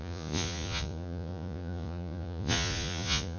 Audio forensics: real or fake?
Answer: fake